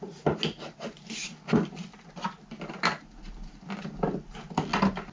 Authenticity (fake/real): real